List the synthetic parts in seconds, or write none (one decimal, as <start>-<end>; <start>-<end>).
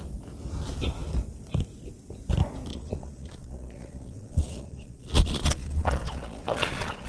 2.7-7.1